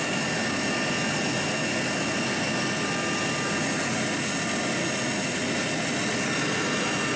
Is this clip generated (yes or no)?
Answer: no